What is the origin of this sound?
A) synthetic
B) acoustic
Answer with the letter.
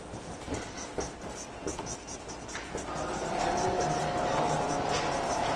B